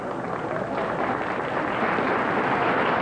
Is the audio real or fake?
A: real